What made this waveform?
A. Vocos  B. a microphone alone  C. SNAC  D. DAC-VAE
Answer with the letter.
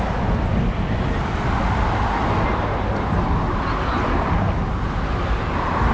B